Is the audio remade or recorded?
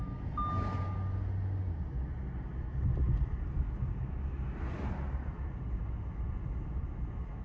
recorded